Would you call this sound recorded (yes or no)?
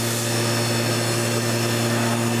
yes